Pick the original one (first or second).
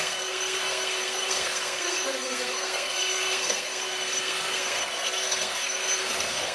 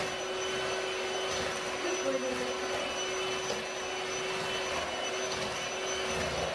second